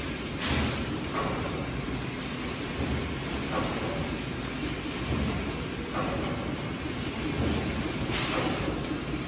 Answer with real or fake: real